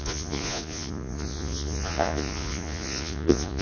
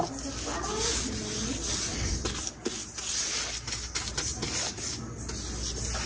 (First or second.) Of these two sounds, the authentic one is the second